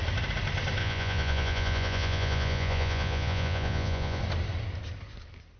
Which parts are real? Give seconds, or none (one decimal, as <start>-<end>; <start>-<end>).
0.0-0.8; 4.2-5.6